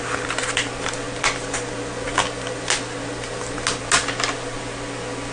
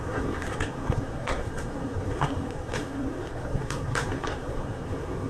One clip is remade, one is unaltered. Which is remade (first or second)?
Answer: second